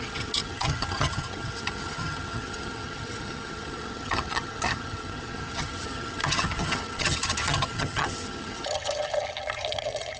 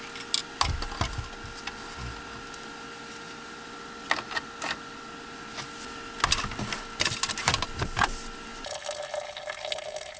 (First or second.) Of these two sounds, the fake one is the first